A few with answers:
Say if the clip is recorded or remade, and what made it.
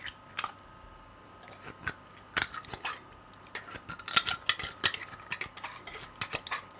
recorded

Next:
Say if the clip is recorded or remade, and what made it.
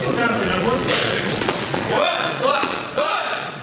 remade, vocoder, Vocos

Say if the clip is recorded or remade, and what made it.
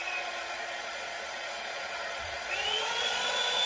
remade, vocoder, Vocos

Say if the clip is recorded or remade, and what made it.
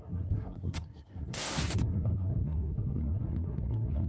remade, codec, SNAC